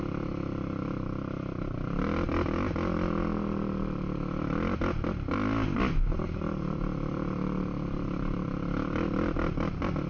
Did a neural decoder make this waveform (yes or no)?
no